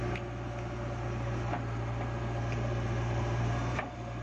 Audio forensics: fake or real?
fake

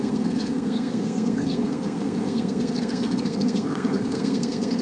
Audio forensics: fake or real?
fake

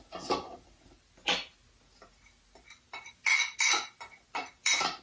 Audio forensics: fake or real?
real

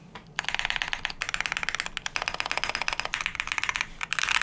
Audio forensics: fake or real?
real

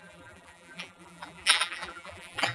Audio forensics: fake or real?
fake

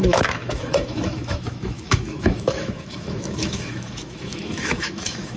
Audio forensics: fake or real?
fake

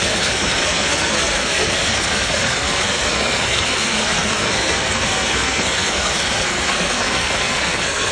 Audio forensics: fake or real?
fake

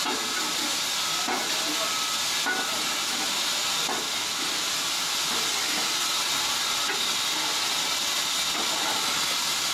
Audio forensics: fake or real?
real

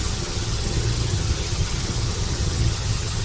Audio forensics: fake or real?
fake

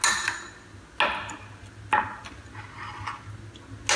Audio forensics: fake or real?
real